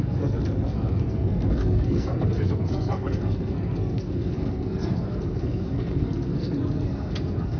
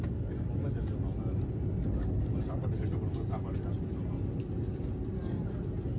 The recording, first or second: second